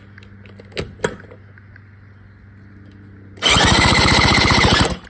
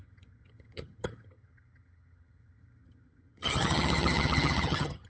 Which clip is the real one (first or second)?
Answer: first